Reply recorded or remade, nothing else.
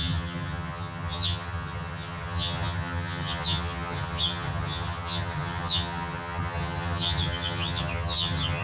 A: remade